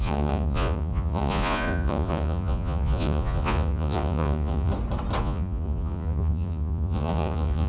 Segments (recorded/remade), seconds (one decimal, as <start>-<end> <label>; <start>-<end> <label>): 0.0-4.7 remade; 4.7-5.2 recorded; 5.2-7.7 remade